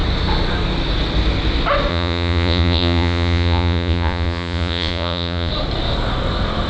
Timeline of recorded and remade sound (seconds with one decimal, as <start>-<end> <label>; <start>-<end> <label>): 0.0-1.9 recorded; 1.9-5.5 remade; 5.5-6.7 recorded